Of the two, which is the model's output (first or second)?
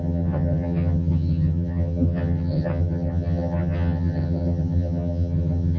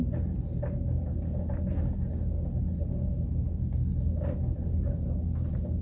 first